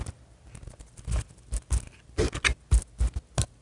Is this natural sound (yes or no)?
yes